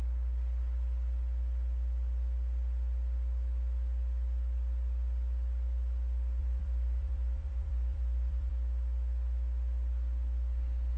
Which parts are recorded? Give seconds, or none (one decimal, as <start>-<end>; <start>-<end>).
0.0-6.4; 8.5-11.0